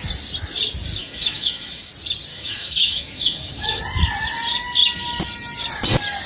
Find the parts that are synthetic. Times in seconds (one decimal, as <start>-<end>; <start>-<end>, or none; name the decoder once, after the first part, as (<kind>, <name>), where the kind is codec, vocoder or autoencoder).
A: 1.0-1.9 (autoencoder, DAC-VAE); 2.3-3.8